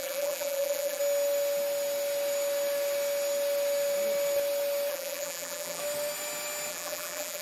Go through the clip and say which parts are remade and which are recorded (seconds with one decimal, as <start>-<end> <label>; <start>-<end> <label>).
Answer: 0.0-1.0 remade; 1.0-4.9 recorded; 4.9-5.8 remade; 5.8-6.7 recorded; 6.7-7.4 remade